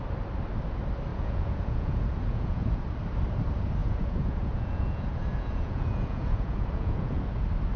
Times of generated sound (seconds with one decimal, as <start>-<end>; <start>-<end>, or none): 1.1-2.8; 3.8-7.2